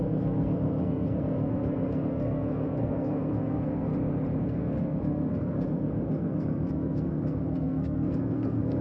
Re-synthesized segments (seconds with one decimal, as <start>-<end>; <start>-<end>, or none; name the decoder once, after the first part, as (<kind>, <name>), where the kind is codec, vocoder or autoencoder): 0.0-3.9 (codec, SNAC); 4.4-8.8